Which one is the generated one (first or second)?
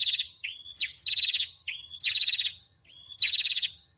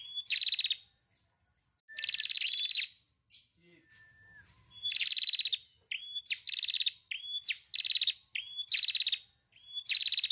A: first